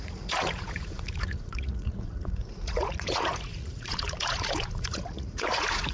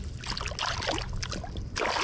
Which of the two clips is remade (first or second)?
first